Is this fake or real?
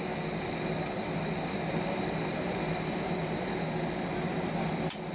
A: real